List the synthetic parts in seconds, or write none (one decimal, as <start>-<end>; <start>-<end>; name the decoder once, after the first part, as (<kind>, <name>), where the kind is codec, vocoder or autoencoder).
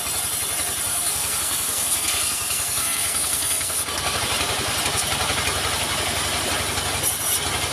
0.9-4.2 (codec, SNAC)